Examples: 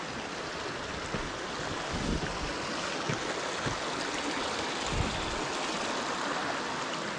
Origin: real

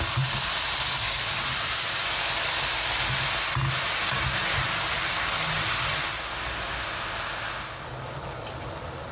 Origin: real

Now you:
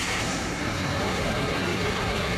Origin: fake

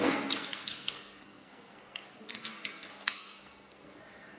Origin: fake